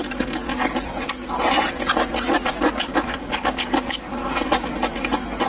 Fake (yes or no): no